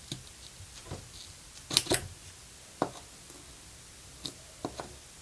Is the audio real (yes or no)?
yes